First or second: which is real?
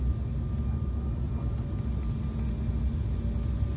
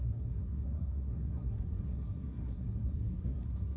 first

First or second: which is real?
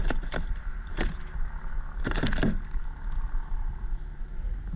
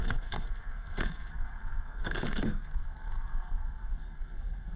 first